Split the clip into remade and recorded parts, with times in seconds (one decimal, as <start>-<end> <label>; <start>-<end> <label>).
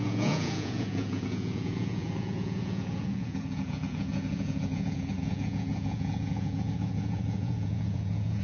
0.0-8.4 remade